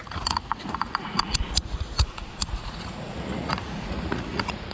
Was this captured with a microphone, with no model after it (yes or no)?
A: no